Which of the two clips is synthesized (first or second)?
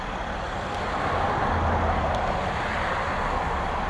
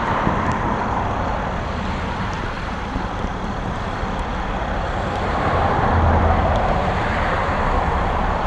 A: second